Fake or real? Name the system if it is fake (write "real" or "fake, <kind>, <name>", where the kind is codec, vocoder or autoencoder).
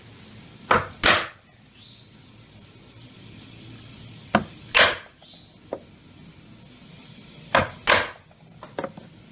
real